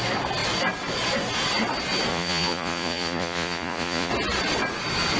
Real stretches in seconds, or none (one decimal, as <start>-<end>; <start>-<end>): 0.0-2.1; 4.1-5.2